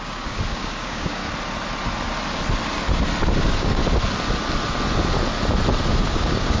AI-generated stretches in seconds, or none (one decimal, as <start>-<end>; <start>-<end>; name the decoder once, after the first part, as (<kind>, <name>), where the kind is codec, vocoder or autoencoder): 0.0-1.2 (codec, DAC); 3.4-3.8; 5.9-6.6

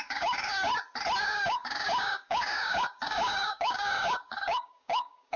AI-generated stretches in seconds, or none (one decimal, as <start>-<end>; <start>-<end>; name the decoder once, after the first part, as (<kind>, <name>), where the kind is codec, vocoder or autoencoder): 0.0-0.7 (codec, DAC); 1.2-5.4